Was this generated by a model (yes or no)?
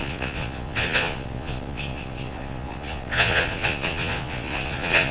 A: yes